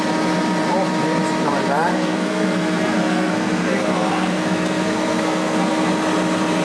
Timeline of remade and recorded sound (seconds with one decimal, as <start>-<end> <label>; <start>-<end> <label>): 0.0-1.9 recorded; 1.9-5.9 remade; 5.9-6.6 recorded